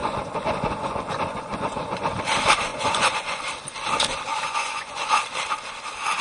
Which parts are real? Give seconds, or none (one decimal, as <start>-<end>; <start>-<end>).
2.1-2.7; 3.4-4.3; 5.2-6.2